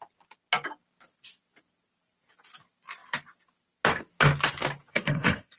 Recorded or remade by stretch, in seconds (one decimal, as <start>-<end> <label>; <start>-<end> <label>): 0.0-4.9 recorded; 4.9-5.6 remade